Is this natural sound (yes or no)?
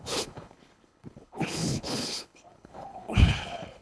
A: no